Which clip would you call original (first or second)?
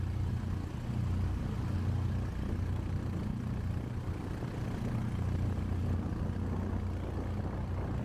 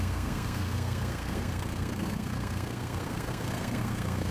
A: first